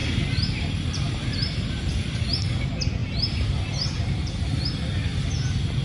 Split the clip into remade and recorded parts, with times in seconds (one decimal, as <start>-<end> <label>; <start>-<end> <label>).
0.0-1.9 remade; 1.9-3.0 recorded; 3.0-4.7 remade; 4.7-5.8 recorded